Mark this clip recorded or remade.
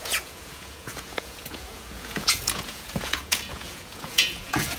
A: remade